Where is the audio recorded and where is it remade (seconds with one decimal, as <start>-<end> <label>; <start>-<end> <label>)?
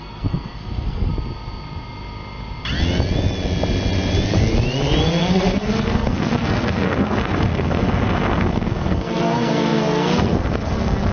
0.0-1.1 remade; 1.1-5.2 recorded; 5.2-11.1 remade